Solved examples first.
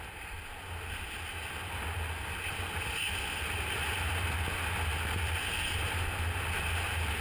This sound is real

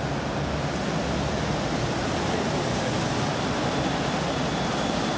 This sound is real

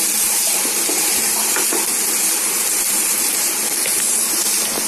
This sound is fake